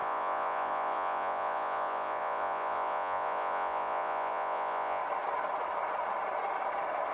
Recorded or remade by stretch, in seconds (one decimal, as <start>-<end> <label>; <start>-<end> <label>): 0.0-5.0 remade; 5.0-7.1 recorded